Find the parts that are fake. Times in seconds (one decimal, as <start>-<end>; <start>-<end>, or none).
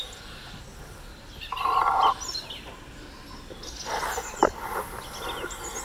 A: none